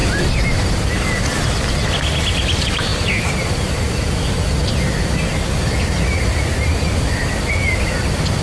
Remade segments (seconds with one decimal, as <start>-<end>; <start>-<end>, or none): none